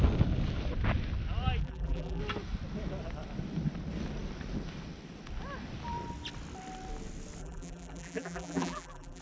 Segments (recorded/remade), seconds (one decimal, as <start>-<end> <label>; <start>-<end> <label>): 0.0-1.6 recorded; 1.6-2.2 remade; 2.2-7.4 recorded; 7.4-9.2 remade